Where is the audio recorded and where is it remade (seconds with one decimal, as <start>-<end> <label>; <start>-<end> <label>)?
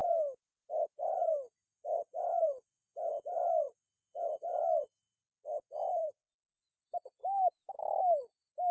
0.0-6.0 recorded; 6.0-6.6 remade; 6.6-8.7 recorded